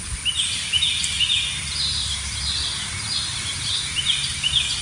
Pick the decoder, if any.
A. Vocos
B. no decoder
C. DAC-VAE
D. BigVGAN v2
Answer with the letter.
B